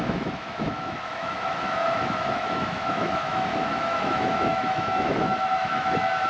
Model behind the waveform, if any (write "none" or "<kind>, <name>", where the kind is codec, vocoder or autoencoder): autoencoder, DAC-VAE